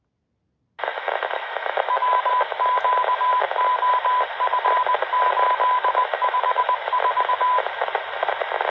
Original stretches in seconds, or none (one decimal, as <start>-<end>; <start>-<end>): 0.0-0.9; 2.3-6.0; 6.6-8.7